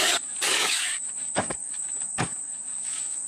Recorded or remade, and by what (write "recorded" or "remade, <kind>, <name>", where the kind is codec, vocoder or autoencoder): remade, codec, DAC